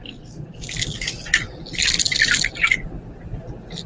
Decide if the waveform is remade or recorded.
recorded